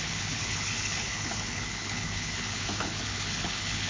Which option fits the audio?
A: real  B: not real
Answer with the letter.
B